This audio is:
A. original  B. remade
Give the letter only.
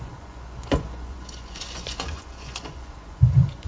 B